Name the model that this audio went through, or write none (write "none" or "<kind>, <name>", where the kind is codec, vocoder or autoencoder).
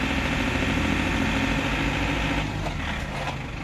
none